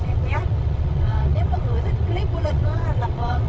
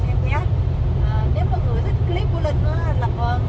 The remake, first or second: first